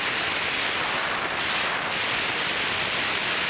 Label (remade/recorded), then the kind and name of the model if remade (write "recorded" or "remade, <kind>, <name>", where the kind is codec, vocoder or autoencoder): recorded